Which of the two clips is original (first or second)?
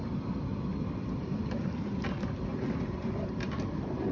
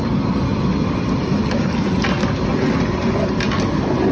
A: second